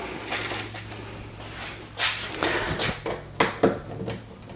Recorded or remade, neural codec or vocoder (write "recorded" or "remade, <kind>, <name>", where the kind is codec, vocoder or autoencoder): recorded